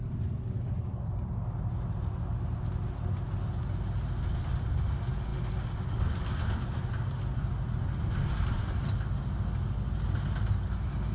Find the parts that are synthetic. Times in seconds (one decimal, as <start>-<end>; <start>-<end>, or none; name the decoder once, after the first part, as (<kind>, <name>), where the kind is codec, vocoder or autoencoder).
none